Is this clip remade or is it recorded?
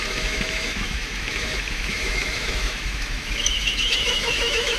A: remade